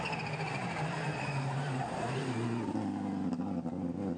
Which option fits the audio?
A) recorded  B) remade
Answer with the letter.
A